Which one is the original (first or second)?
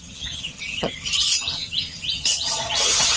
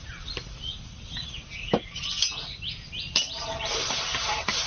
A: second